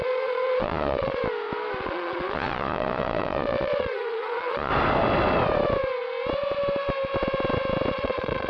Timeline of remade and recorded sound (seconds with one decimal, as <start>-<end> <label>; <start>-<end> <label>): 0.0-1.2 remade; 1.2-1.8 recorded; 1.8-4.7 remade; 4.7-7.9 recorded; 7.9-8.5 remade

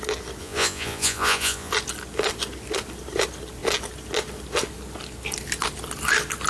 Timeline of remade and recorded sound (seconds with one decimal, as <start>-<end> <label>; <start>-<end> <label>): 0.0-0.4 recorded; 0.4-1.7 remade; 1.7-6.5 recorded

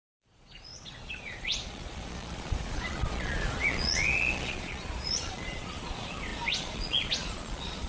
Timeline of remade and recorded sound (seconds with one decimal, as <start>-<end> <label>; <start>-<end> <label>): 0.0-7.9 remade